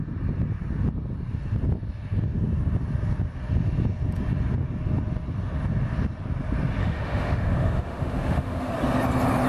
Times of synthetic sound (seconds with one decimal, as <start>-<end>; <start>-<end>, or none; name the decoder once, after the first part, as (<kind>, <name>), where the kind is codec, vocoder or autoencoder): 6.8-8.7 (autoencoder, DAC-VAE)